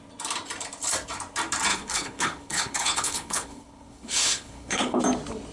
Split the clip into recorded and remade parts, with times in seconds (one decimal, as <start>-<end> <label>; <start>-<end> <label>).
0.0-1.7 recorded; 1.7-5.0 remade; 5.0-5.5 recorded